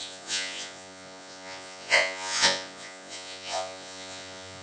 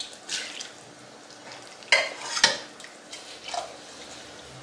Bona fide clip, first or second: second